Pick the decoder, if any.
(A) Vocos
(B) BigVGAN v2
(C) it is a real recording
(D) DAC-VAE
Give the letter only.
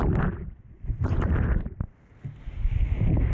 C